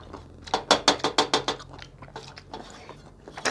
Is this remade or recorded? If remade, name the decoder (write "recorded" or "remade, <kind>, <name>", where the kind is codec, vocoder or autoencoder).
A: recorded